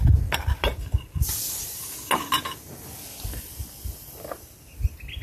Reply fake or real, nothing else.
real